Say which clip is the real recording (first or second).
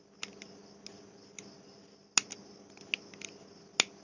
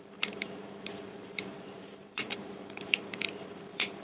first